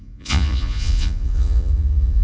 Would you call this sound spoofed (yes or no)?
yes